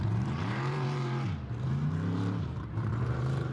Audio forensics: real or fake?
fake